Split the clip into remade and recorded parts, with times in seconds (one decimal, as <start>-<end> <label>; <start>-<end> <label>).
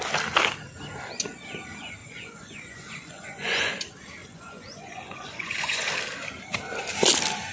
0.0-2.0 recorded; 2.0-3.7 remade; 3.7-4.2 recorded; 4.2-5.9 remade; 5.9-7.5 recorded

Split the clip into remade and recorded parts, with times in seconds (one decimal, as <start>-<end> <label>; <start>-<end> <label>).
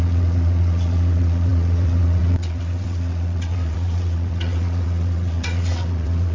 0.0-6.3 remade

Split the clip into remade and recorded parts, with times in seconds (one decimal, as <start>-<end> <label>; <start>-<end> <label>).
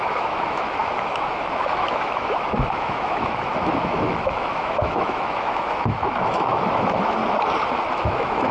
0.0-7.2 remade; 7.2-7.9 recorded; 7.9-8.5 remade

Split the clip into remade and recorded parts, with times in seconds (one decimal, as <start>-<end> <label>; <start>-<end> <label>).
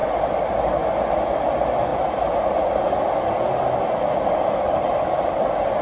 0.0-1.1 remade; 1.1-1.9 recorded; 1.9-5.3 remade; 5.3-5.8 recorded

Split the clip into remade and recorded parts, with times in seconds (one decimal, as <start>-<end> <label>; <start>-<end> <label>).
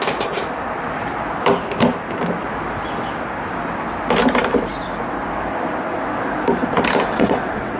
0.0-7.1 recorded; 7.1-7.8 remade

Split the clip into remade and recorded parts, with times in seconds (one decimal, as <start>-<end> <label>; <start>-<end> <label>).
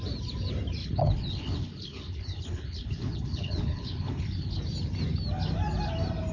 0.0-0.8 recorded; 0.8-4.6 remade; 4.6-6.3 recorded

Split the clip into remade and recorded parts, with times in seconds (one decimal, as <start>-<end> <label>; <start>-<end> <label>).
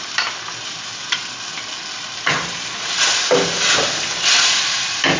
0.0-5.2 recorded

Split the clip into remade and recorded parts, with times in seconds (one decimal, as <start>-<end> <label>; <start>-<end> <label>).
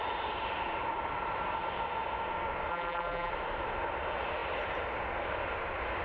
0.0-2.7 recorded; 2.7-3.3 remade; 3.3-6.0 recorded